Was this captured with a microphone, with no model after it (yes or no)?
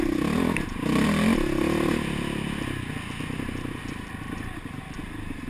yes